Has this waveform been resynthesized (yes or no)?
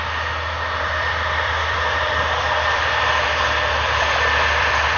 yes